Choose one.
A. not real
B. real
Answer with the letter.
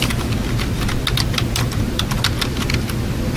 B